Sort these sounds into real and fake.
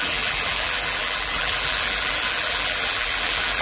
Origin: fake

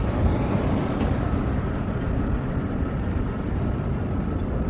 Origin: fake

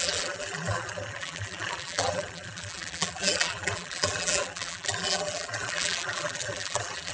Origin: fake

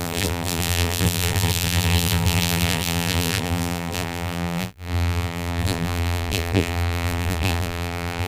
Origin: fake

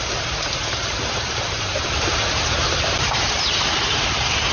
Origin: fake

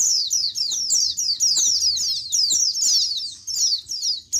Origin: real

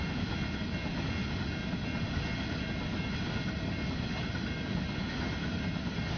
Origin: real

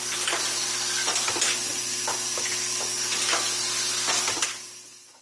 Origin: real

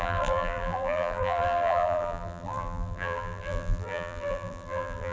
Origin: fake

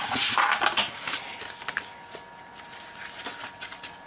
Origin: real